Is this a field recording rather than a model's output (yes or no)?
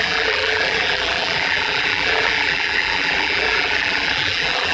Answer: no